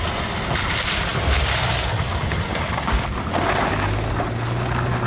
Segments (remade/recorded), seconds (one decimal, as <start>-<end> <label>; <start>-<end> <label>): 0.0-5.1 recorded